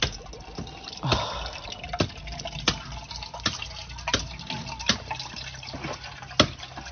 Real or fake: real